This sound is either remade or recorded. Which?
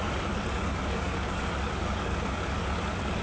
remade